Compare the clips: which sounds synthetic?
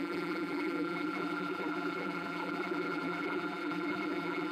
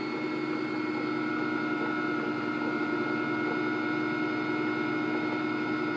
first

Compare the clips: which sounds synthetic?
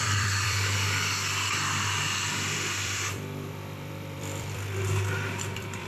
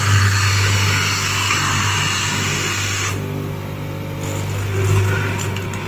first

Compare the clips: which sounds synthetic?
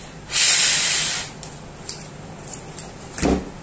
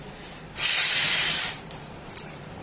second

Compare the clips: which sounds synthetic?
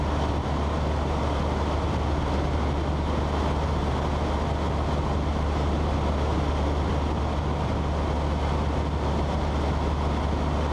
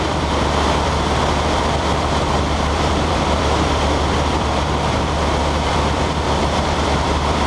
second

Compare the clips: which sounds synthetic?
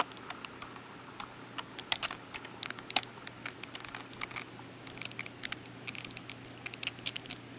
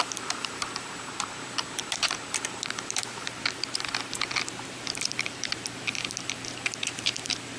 second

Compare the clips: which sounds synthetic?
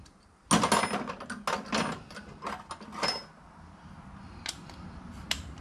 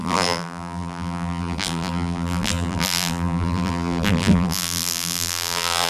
second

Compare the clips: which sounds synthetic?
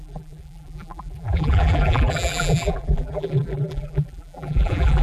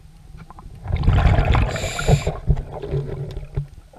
first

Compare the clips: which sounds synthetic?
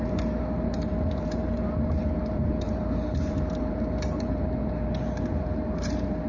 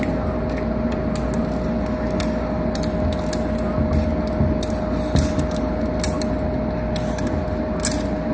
first